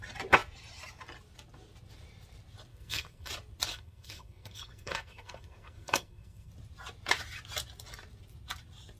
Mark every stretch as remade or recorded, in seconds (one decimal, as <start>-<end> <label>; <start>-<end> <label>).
0.0-2.7 recorded; 2.7-3.3 remade; 3.3-3.7 recorded; 3.7-6.5 remade; 6.5-9.0 recorded